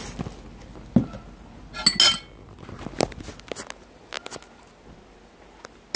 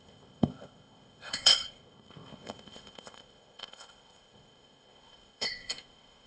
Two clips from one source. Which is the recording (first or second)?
first